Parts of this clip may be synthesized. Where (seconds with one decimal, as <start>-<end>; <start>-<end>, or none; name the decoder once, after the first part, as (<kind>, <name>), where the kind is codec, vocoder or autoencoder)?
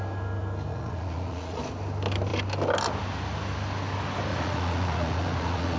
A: 0.7-1.6 (vocoder, Vocos); 4.3-5.8